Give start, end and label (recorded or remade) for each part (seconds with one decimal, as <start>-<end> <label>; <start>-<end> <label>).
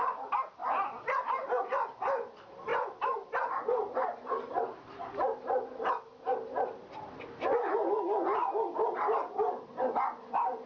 0.0-0.6 recorded; 0.6-1.3 remade; 1.3-2.7 recorded; 2.7-5.1 remade; 5.1-10.7 recorded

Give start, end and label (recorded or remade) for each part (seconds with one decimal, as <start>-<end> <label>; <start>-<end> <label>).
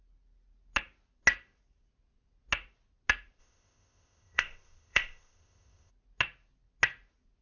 0.0-3.4 recorded; 3.4-5.9 remade; 5.9-7.4 recorded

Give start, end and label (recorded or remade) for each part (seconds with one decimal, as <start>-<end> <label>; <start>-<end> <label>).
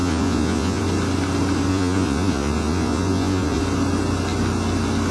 0.0-0.8 remade; 0.8-1.7 recorded; 1.7-3.6 remade; 3.6-5.1 recorded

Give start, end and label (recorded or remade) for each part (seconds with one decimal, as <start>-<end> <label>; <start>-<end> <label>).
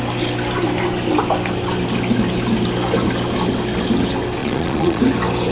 0.0-4.4 recorded; 4.4-5.0 remade; 5.0-5.5 recorded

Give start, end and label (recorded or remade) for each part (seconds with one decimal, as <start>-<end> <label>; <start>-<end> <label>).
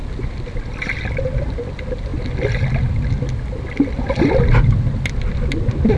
0.0-6.0 recorded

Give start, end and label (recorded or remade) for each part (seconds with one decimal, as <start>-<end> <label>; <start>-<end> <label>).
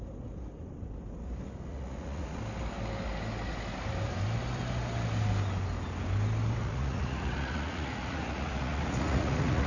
0.0-1.7 recorded; 1.7-2.4 remade; 2.4-6.6 recorded; 6.6-9.7 remade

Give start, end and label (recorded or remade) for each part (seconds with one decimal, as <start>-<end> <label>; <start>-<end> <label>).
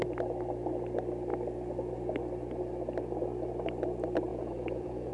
0.0-4.3 recorded; 4.3-5.1 remade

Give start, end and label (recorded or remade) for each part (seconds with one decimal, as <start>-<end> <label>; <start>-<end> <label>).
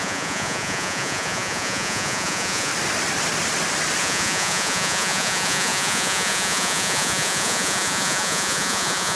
0.0-2.7 remade; 2.7-4.0 recorded; 4.0-9.2 remade